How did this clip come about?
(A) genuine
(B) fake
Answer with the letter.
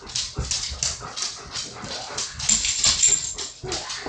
A